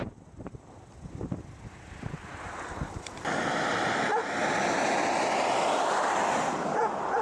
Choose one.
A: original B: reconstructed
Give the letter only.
A